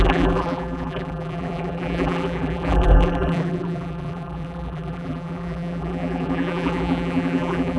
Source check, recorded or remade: remade